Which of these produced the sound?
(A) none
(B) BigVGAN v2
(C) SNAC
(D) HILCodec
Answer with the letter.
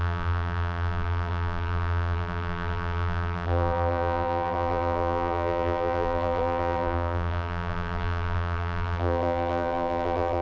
B